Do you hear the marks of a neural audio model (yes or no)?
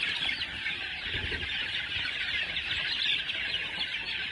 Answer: no